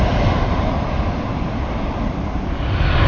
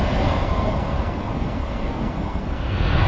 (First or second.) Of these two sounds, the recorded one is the first